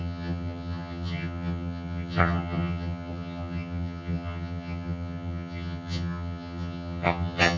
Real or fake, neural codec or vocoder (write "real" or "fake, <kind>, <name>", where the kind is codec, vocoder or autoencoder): fake, vocoder, HiFi-GAN